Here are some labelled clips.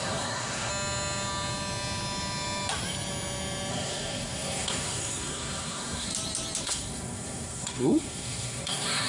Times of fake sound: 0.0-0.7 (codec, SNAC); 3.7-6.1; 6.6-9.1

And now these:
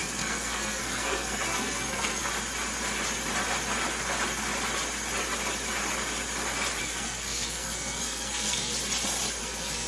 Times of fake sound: 0.0-2.2 (codec, SNAC); 6.8-8.7; 9.4-9.9

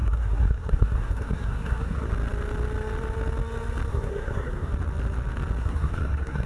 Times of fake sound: 0.0-2.1 (codec, SNAC); 3.9-4.7; 5.6-6.5

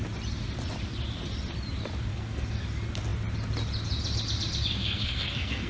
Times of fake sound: 2.1-2.6 (codec, SNAC); 4.8-5.7

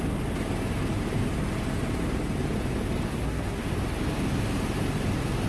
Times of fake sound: 3.1-3.6 (codec, SNAC)